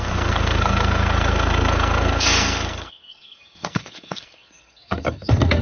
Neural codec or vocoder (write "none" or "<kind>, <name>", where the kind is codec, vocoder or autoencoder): codec, SNAC